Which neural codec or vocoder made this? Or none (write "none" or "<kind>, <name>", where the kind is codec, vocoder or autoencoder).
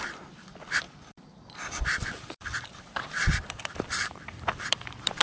vocoder, BigVGAN v2